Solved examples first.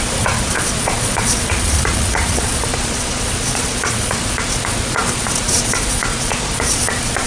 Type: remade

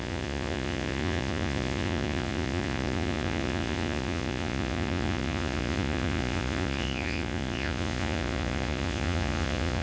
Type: remade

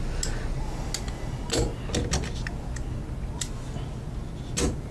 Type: recorded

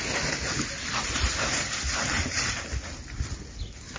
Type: recorded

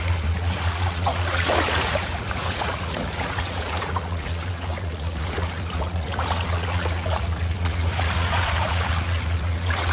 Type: remade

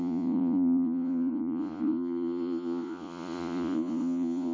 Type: remade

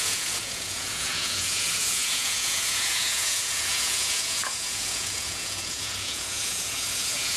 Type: remade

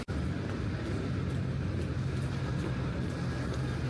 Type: recorded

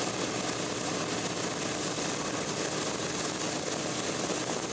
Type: recorded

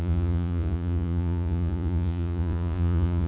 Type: remade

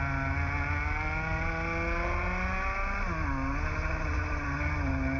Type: recorded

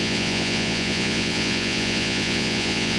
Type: remade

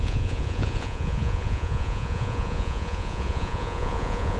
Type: remade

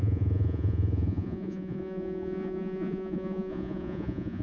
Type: remade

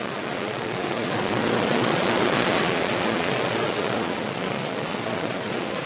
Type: remade